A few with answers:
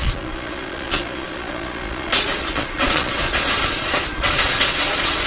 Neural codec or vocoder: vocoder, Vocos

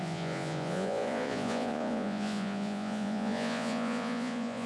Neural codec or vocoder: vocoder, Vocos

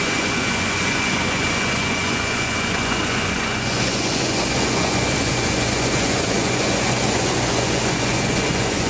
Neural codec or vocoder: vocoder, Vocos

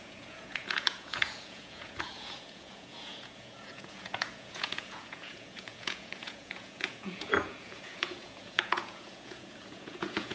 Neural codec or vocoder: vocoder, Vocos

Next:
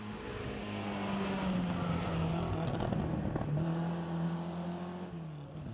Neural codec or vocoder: none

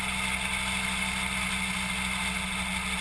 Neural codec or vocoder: none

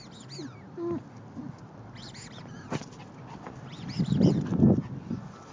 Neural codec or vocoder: none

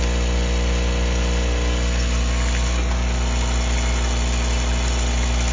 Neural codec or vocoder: none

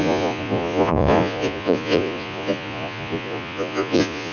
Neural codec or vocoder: vocoder, Vocos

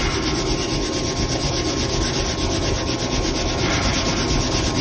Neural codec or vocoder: none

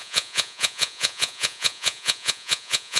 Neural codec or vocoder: vocoder, Vocos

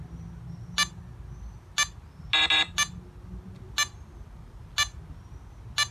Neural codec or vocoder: none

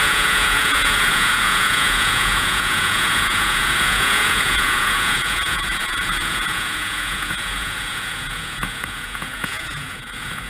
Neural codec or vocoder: vocoder, Vocos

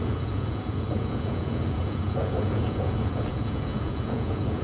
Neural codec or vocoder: vocoder, Vocos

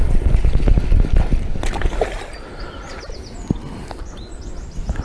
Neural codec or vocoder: none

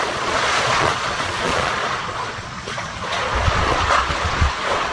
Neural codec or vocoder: vocoder, Vocos